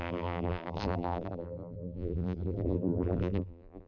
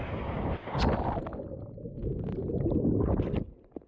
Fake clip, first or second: first